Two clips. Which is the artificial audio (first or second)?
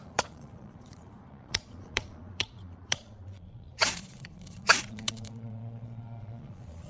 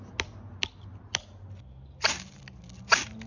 first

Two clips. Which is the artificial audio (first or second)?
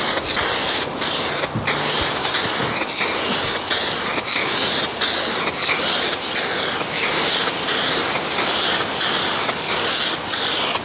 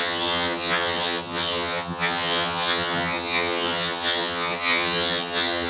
second